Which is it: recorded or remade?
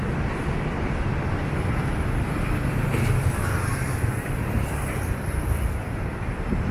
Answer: remade